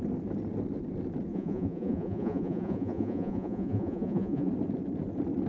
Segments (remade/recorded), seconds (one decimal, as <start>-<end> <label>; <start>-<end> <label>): 0.0-1.3 recorded; 1.3-4.5 remade; 4.5-5.5 recorded